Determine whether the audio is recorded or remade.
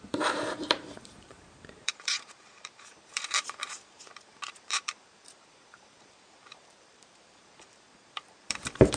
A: remade